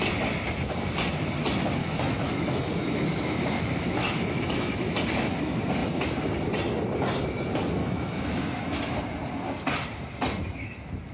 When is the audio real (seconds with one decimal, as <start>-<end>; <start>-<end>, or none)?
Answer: 0.0-1.8; 4.7-7.8; 9.0-11.1